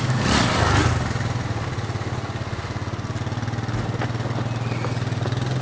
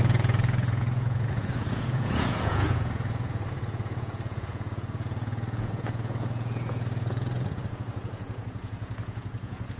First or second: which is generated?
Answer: second